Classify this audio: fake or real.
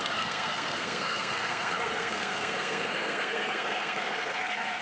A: fake